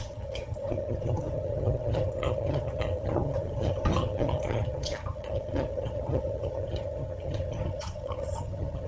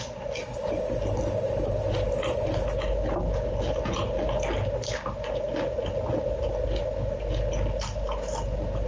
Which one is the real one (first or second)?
second